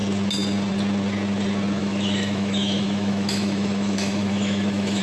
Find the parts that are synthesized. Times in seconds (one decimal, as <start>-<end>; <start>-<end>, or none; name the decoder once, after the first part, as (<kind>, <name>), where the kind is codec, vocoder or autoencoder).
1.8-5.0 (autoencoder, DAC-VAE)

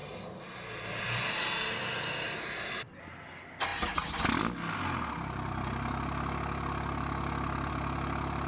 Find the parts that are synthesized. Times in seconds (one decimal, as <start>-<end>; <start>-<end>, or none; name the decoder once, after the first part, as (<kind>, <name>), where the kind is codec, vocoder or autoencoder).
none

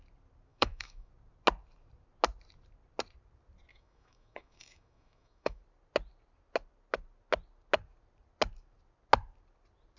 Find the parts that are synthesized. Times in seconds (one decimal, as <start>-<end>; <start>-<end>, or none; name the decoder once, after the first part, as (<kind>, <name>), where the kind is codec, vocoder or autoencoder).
0.5-1.1 (autoencoder, DAC-VAE); 3.7-5.6

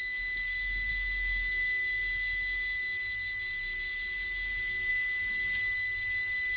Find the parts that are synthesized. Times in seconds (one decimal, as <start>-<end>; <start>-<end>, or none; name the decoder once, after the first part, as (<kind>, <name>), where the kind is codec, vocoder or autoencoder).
none

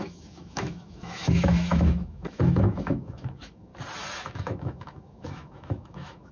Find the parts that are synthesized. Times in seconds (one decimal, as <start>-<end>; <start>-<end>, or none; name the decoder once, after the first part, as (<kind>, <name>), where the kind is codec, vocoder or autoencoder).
0.0-3.7 (autoencoder, DAC-VAE); 4.2-6.3

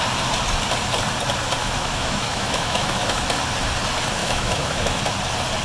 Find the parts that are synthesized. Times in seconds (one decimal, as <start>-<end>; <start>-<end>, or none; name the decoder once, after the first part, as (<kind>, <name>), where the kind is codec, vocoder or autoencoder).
1.6-3.2 (autoencoder, DAC-VAE); 4.2-5.0